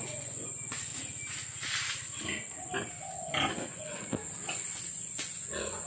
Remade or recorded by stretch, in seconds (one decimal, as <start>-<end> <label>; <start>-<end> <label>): 0.0-0.9 remade; 0.9-3.5 recorded; 3.5-4.2 remade; 4.2-4.9 recorded; 4.9-5.9 remade